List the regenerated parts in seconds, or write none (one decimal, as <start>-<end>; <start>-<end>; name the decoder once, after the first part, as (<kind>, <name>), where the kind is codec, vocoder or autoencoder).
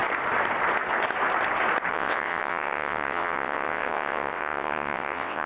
1.9-5.5 (vocoder, WaveNeXt)